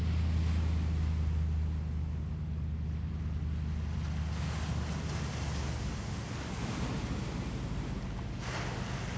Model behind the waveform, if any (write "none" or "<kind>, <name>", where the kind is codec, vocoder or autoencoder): none